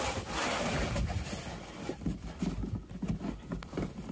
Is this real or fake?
real